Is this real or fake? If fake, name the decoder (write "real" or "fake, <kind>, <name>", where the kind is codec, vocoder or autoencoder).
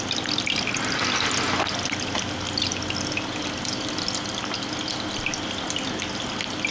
real